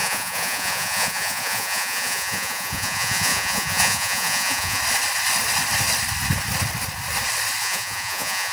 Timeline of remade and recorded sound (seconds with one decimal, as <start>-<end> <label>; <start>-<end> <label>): 0.0-4.8 remade; 4.8-7.6 recorded; 7.6-8.5 remade